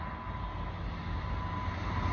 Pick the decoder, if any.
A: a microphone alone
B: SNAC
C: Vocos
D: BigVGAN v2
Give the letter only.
A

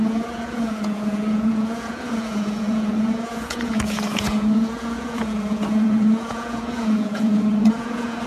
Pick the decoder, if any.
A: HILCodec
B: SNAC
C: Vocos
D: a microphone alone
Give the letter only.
C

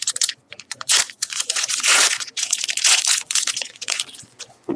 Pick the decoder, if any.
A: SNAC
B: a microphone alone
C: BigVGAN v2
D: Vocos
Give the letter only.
D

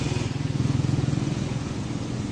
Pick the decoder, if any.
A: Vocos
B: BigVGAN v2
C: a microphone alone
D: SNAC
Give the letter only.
A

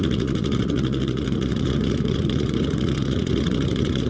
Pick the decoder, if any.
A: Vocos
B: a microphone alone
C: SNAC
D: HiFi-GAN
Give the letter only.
A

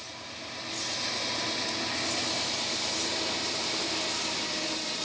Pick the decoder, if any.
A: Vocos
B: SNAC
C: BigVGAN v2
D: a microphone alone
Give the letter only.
D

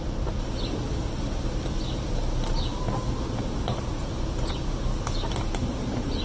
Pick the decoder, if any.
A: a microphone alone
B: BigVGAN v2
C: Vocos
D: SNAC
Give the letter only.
A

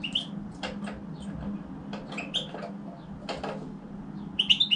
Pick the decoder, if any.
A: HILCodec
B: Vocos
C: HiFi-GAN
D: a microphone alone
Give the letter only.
D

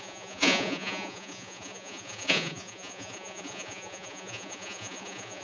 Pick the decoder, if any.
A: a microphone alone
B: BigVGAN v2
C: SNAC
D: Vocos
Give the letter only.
D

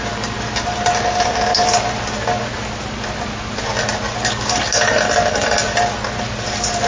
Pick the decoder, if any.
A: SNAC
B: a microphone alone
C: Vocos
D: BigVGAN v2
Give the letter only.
B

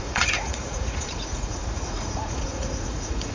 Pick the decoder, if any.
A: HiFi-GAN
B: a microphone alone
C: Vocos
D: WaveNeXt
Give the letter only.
C